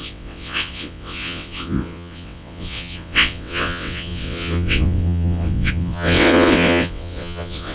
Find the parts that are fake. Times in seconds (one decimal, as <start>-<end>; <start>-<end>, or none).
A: 0.0-7.7